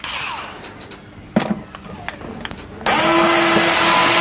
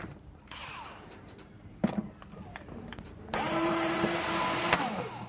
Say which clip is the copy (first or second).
second